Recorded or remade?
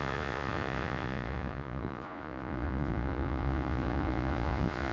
remade